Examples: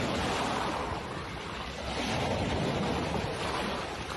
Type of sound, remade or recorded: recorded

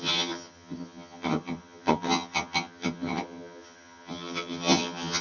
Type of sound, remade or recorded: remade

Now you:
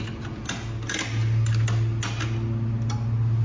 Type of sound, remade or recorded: recorded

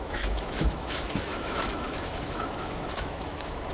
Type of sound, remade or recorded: remade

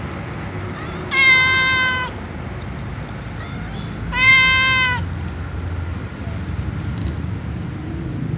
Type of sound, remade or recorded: recorded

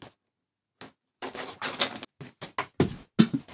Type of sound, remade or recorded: recorded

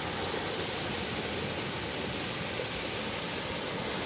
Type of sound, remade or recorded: recorded